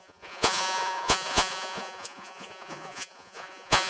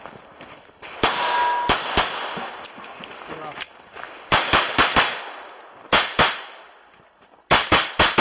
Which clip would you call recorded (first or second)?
second